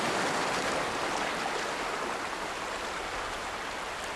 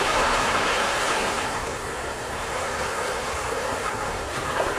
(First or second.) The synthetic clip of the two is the second